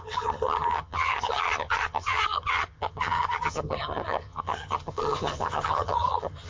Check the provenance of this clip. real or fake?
fake